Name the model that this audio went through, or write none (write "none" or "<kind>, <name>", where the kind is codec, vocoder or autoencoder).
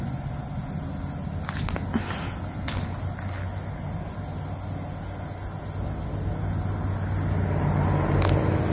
none